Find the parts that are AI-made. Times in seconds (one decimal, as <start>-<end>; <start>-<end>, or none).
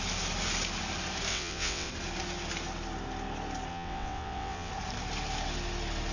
1.3-1.9; 3.7-4.7